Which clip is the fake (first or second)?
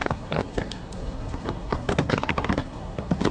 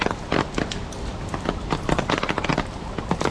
first